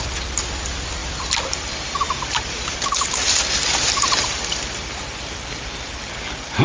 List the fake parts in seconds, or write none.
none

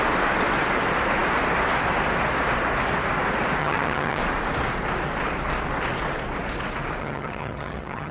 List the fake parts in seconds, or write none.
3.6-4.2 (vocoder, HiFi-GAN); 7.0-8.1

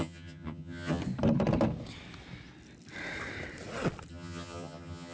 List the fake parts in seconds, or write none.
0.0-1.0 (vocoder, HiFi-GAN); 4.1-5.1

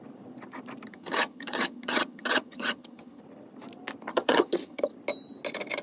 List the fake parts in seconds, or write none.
0.9-3.2 (vocoder, HiFi-GAN); 4.1-4.9

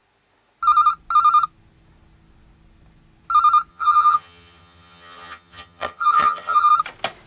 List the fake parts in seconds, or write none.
3.7-6.7 (vocoder, HiFi-GAN)